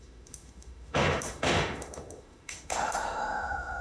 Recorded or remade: remade